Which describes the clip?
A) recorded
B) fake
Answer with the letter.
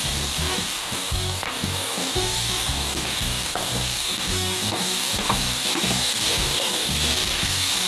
B